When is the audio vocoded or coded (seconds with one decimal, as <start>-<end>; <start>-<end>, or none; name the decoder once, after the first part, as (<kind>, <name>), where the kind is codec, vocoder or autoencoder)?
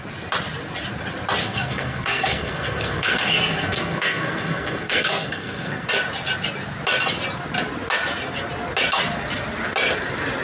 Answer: 1.4-5.9 (codec, SNAC)